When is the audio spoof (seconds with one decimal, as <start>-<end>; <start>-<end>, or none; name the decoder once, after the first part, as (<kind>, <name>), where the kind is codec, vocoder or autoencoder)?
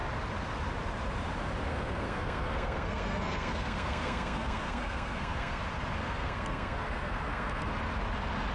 1.7-5.6 (codec, SNAC); 6.0-7.7